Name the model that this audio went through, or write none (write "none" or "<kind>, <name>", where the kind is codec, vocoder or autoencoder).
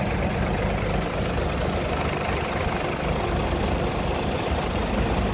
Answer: none